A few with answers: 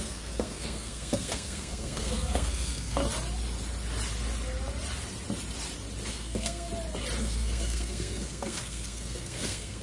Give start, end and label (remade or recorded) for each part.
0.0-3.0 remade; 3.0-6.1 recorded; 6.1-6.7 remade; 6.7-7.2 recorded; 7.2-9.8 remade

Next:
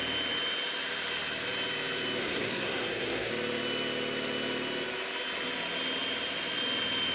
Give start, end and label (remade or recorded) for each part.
0.0-2.2 recorded; 2.2-3.3 remade; 3.3-7.1 recorded

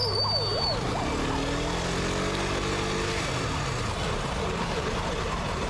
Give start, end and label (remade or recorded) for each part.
0.0-5.7 recorded

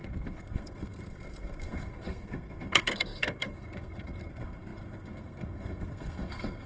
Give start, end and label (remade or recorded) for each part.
0.0-6.7 remade

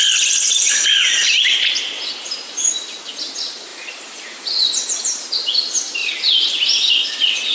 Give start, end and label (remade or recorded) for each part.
0.0-7.5 recorded

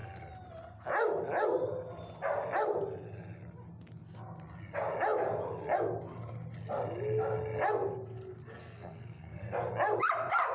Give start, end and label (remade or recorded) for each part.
0.0-8.6 recorded; 8.6-9.7 remade; 9.7-10.5 recorded

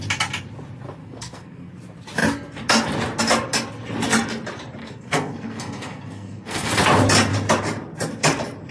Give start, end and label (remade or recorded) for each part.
0.0-1.0 recorded; 1.0-1.7 remade; 1.7-4.8 recorded; 4.8-6.7 remade; 6.7-8.7 recorded